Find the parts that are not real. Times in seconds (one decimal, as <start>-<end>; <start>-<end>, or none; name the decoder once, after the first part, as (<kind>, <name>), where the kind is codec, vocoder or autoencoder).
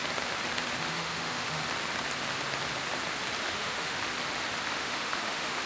0.9-1.6 (autoencoder, DAC-VAE); 3.4-4.0; 4.7-5.7